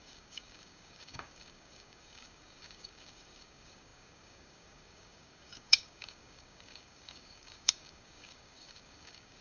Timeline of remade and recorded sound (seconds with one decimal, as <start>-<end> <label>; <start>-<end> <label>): 0.0-9.4 remade